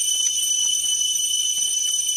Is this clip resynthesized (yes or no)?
no